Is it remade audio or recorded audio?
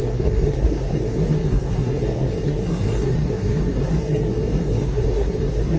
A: remade